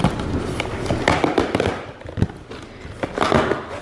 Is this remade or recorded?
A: recorded